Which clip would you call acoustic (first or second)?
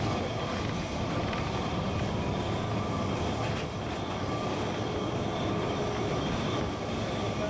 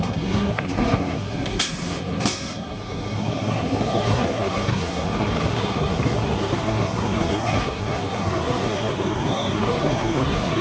first